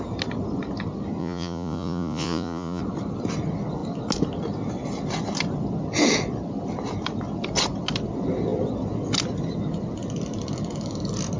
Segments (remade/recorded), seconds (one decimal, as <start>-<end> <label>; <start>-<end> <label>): 0.0-1.2 recorded; 1.2-2.8 remade; 2.8-11.4 recorded